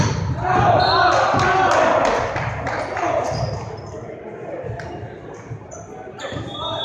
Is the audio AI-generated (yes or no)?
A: no